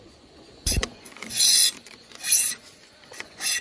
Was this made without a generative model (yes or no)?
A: no